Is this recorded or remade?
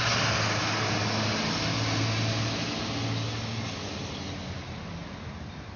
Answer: recorded